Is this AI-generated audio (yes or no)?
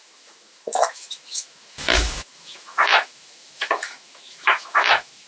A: yes